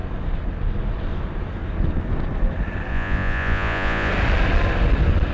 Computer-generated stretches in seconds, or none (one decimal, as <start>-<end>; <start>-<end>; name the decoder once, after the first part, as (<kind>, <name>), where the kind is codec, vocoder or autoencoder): 2.9-4.1 (vocoder, Vocos)